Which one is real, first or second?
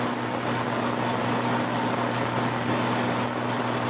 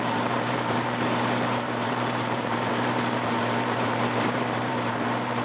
first